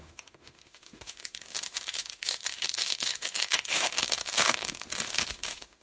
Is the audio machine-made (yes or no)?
yes